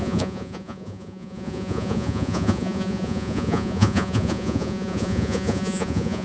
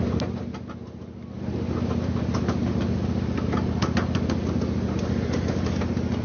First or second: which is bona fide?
second